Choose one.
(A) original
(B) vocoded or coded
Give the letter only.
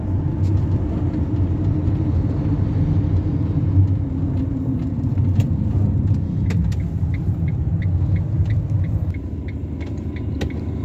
A